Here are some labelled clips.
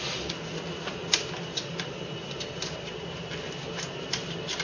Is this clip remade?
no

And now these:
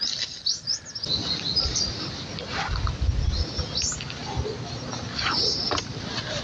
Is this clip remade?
no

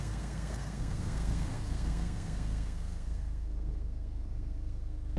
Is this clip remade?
yes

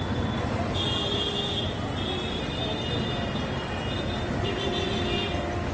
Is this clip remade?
no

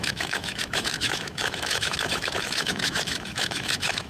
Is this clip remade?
yes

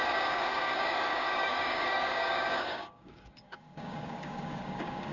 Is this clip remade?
yes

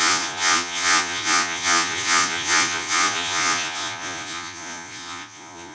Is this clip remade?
yes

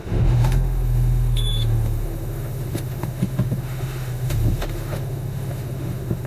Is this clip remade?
yes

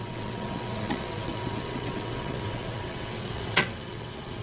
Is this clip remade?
yes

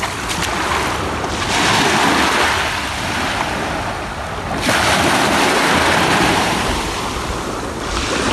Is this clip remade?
no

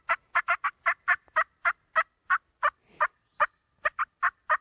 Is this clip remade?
no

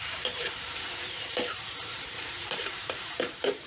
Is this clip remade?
yes